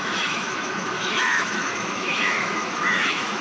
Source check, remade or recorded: remade